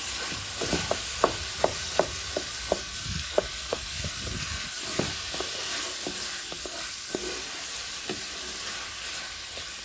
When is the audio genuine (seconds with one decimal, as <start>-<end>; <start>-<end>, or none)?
0.0-2.8; 5.0-6.3; 7.2-9.8

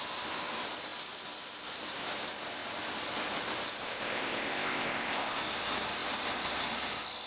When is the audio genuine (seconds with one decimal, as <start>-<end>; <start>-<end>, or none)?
0.0-3.8; 5.4-7.3

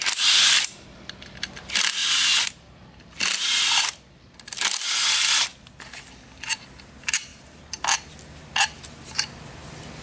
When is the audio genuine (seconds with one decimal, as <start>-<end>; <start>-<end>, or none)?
0.0-10.0

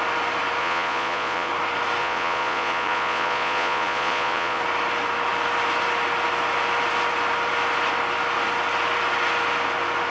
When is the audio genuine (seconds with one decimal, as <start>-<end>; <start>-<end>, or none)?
0.0-0.6; 1.5-2.0; 4.6-10.1

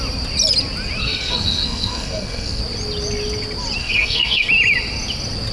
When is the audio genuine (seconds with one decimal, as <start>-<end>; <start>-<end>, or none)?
0.0-1.0; 2.6-3.8; 4.5-5.5

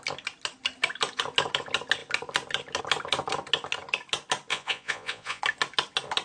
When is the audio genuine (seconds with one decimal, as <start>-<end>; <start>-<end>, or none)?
0.0-4.5; 5.4-6.2

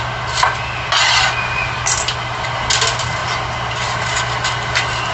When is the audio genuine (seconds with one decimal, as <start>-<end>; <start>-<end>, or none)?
0.0-5.1